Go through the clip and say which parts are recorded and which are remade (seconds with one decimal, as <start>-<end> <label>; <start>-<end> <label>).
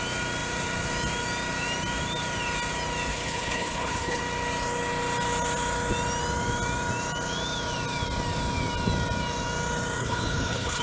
0.0-3.1 recorded; 3.1-4.2 remade; 4.2-10.0 recorded; 10.0-10.8 remade